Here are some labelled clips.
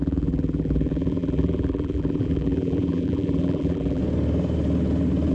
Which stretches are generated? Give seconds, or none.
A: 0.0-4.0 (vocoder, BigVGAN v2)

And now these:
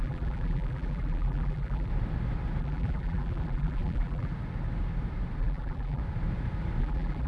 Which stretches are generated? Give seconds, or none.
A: 0.0-1.9 (vocoder, BigVGAN v2); 2.6-4.3; 5.4-6.0; 6.8-7.3

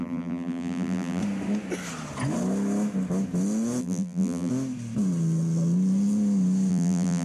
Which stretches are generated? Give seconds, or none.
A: 0.0-1.2 (vocoder, BigVGAN v2); 3.8-4.5; 6.7-7.2

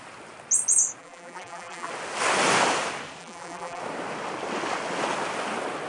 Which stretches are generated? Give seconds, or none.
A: 1.0-1.9 (vocoder, BigVGAN v2); 3.2-3.8

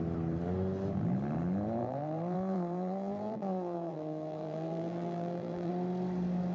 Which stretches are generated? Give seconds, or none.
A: 1.8-5.7 (vocoder, BigVGAN v2)

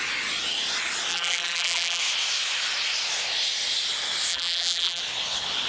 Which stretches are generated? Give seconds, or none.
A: 1.1-2.0 (vocoder, BigVGAN v2); 4.3-5.0

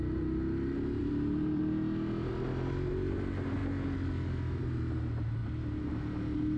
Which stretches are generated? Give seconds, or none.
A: 1.0-1.6 (vocoder, BigVGAN v2)